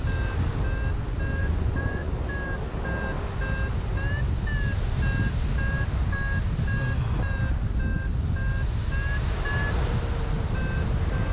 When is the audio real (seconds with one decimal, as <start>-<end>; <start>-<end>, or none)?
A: 0.0-1.4; 2.1-11.3